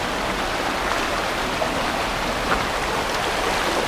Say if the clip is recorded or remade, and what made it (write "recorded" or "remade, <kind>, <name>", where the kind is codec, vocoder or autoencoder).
recorded